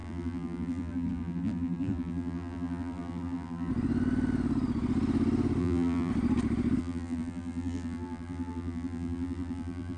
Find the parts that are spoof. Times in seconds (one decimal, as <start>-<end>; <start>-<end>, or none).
0.0-3.7; 5.6-6.1; 6.8-10.0

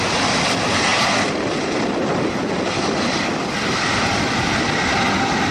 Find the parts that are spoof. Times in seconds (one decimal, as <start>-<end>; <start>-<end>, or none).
0.0-5.5

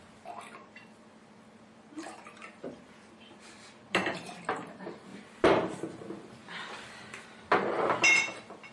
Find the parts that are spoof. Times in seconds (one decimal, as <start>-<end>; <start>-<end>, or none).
5.1-6.0

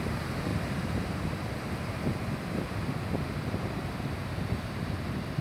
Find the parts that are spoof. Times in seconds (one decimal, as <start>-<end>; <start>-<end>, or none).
0.5-1.7

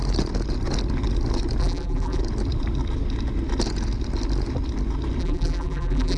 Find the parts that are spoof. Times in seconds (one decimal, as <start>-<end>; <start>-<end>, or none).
1.6-2.2; 5.2-6.2

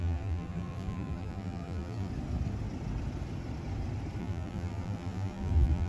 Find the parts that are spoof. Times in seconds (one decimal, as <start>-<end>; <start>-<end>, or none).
0.0-2.1; 4.2-5.9